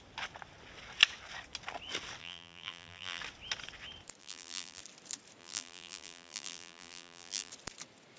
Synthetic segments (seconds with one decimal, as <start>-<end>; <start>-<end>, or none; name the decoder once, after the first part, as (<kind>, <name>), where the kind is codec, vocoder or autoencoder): 2.2-3.2 (vocoder, BigVGAN v2); 4.2-4.8; 5.4-7.5